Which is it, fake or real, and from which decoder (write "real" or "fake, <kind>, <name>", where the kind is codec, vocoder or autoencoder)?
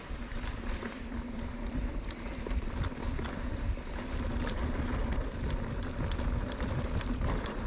fake, vocoder, BigVGAN v2